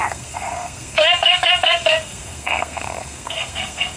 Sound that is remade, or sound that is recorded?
remade